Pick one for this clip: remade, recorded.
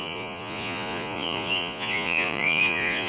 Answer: remade